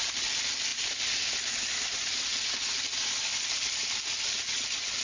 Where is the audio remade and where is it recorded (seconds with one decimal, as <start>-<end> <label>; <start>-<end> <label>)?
0.0-5.0 recorded